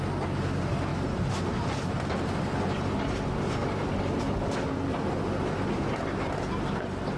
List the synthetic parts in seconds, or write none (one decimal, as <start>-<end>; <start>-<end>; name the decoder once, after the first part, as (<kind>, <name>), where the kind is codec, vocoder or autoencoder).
3.6-4.2 (vocoder, BigVGAN v2)